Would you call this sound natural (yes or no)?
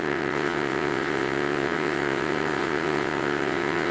no